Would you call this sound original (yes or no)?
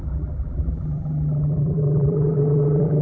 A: no